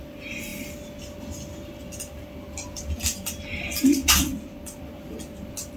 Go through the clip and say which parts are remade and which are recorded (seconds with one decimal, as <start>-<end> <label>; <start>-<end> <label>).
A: 0.0-5.8 recorded